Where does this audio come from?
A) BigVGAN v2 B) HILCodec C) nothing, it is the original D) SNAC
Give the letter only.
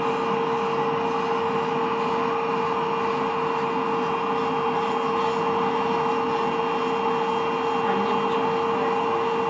C